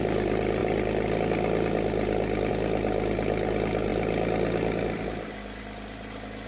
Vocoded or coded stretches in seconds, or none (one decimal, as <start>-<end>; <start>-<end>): none